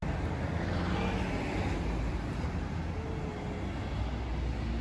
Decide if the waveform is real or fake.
real